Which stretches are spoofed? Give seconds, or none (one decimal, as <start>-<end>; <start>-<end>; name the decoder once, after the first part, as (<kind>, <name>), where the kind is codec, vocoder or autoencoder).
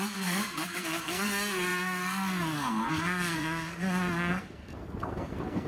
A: 0.0-5.7 (codec, SNAC)